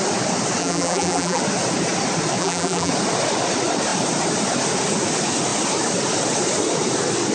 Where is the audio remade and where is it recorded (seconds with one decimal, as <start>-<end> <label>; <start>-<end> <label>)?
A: 0.0-0.6 recorded; 0.6-1.4 remade; 1.4-2.4 recorded; 2.4-2.9 remade; 2.9-7.3 recorded